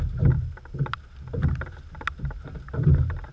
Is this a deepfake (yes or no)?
no